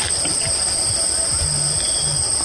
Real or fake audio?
real